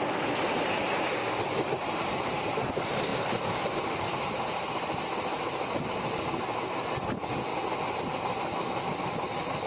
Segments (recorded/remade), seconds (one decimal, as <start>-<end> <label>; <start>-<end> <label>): 0.0-1.1 recorded; 1.1-2.7 remade; 2.7-3.1 recorded; 3.1-3.7 remade; 3.7-7.5 recorded; 7.5-8.0 remade; 8.0-9.7 recorded